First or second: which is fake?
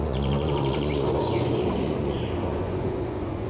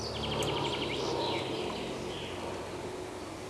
first